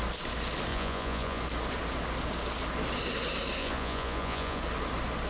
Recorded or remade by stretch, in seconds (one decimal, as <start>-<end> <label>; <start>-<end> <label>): 0.0-0.7 recorded; 0.7-1.4 remade; 1.4-3.6 recorded; 3.6-4.6 remade; 4.6-5.3 recorded